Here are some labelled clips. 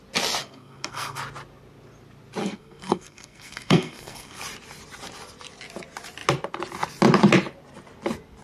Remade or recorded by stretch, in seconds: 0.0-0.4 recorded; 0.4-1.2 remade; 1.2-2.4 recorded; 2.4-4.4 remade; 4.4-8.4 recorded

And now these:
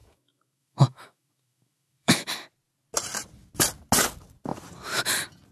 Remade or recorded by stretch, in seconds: 0.0-2.3 remade; 2.3-5.5 recorded

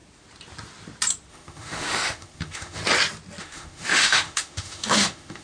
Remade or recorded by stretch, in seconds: 0.0-1.3 recorded; 1.3-2.8 remade; 2.8-3.4 recorded; 3.4-5.4 remade

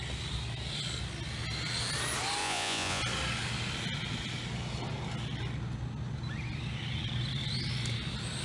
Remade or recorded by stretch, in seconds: 0.0-2.4 recorded; 2.4-3.0 remade; 3.0-8.4 recorded

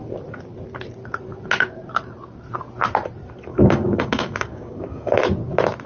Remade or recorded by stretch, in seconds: 0.0-3.5 recorded; 3.5-5.2 remade; 5.2-5.9 recorded